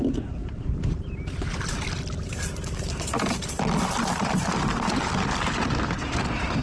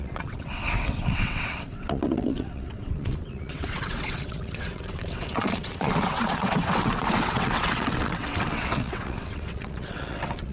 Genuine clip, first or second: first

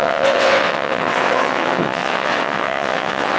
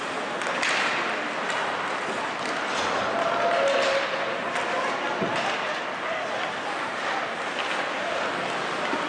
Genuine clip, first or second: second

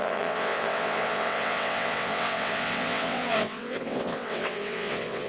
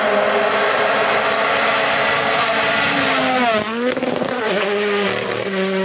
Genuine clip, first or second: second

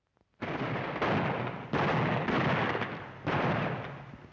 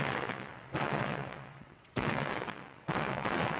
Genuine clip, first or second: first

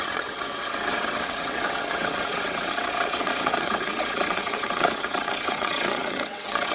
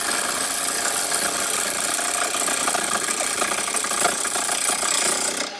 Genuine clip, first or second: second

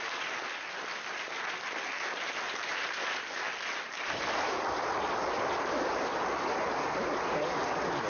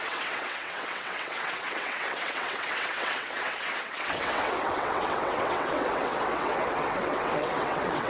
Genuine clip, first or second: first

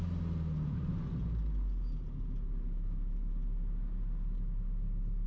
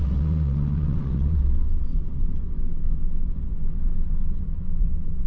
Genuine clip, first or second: first